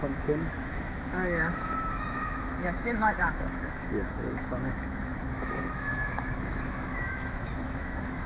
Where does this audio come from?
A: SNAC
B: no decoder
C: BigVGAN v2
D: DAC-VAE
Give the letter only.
D